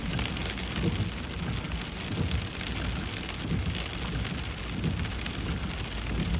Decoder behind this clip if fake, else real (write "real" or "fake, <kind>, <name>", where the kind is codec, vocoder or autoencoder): real